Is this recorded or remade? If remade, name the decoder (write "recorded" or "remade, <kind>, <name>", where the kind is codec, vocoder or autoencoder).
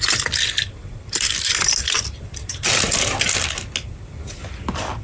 recorded